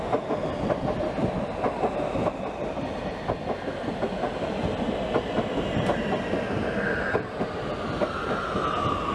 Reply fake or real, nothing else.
real